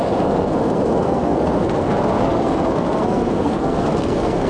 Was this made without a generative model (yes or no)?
no